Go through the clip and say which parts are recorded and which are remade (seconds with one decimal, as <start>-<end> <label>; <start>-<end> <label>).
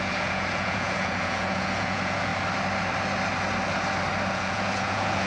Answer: 0.0-2.3 remade; 2.3-4.3 recorded; 4.3-5.3 remade